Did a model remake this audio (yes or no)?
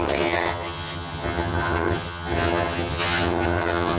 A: yes